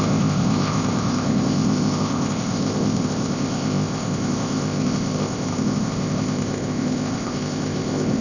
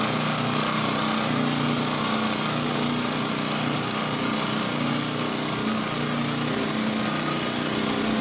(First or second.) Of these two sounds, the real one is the second